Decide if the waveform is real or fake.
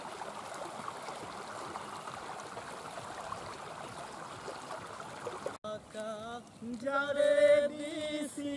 real